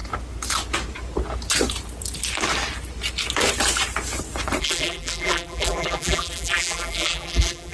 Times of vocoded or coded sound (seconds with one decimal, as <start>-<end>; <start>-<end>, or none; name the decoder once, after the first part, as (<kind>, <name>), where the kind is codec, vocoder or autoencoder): 4.6-7.7 (vocoder, BigVGAN v2)

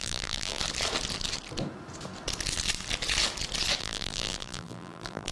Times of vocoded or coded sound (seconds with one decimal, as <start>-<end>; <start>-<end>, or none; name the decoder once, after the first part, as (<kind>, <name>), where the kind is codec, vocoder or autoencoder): 0.0-0.6 (vocoder, BigVGAN v2); 3.8-5.3

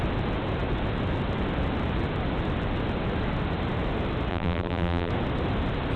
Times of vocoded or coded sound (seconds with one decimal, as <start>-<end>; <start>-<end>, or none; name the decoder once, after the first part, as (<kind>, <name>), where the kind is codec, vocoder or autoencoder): 4.3-5.1 (vocoder, BigVGAN v2)

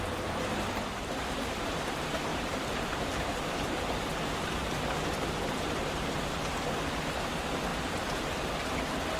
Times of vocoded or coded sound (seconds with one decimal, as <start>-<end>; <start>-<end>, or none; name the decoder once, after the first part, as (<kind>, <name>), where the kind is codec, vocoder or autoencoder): 2.3-6.1 (vocoder, BigVGAN v2); 7.7-8.5